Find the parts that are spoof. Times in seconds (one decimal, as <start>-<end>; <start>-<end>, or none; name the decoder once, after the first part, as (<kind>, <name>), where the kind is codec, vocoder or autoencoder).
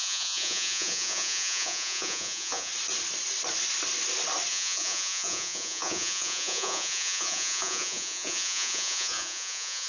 0.0-2.7 (vocoder, Vocos); 4.5-9.9